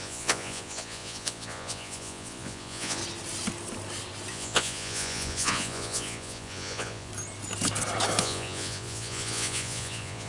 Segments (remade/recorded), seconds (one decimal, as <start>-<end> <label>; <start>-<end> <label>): 0.0-3.0 remade; 3.0-4.3 recorded; 4.3-7.1 remade; 7.1-8.2 recorded; 8.2-10.3 remade